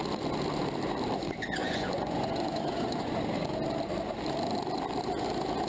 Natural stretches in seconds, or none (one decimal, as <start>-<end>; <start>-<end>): 0.0-1.6; 3.1-5.7